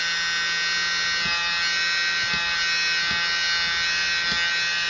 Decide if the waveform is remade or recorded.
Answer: recorded